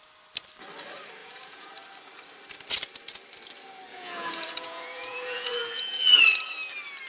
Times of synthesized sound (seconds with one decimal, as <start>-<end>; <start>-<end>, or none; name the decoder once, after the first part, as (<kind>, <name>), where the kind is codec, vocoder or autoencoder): 1.2-1.7 (vocoder, Vocos); 3.9-6.2